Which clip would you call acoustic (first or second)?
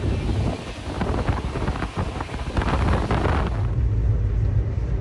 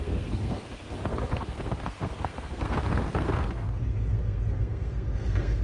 first